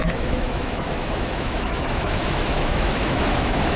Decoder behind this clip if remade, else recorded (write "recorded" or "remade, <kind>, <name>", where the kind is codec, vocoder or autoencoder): remade, autoencoder, DAC-VAE